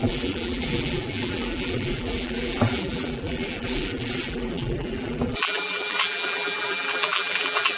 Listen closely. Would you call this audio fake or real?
fake